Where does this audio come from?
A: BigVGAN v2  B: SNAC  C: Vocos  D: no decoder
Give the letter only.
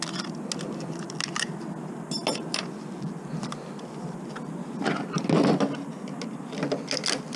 D